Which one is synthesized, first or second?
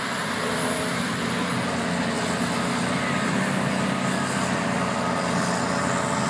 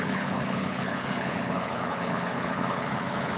second